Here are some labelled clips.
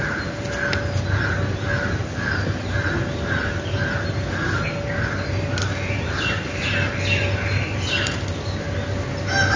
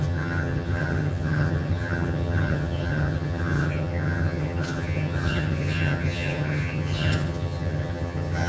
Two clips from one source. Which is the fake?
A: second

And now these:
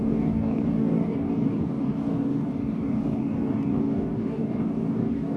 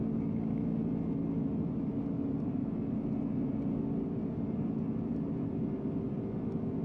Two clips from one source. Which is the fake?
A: first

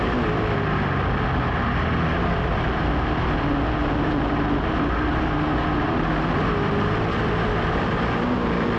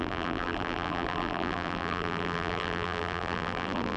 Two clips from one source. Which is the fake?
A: second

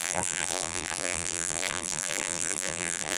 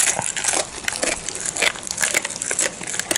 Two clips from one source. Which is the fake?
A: first